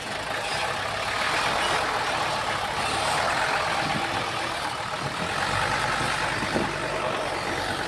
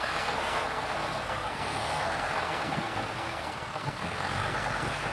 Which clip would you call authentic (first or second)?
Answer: first